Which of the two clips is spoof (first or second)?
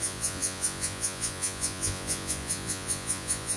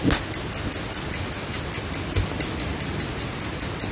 first